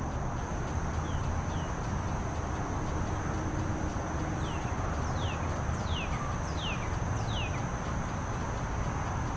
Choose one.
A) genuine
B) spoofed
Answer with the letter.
A